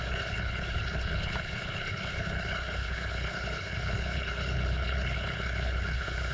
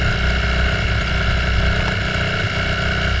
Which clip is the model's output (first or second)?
first